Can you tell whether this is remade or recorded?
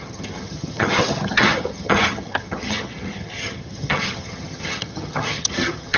remade